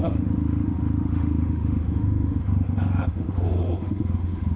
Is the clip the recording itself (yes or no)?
no